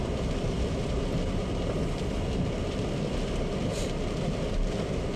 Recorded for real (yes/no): yes